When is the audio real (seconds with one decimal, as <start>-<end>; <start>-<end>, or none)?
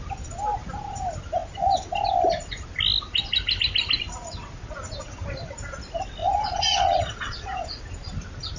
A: 0.0-6.2; 7.8-8.6